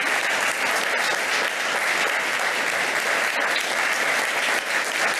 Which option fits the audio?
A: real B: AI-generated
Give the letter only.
A